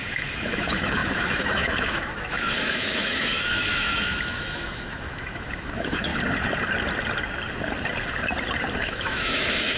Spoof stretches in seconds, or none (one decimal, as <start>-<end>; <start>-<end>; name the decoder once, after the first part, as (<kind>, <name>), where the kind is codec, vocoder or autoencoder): 0.0-6.1 (autoencoder, DAC-VAE); 8.8-9.8